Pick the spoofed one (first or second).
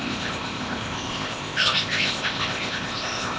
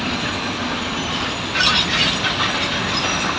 first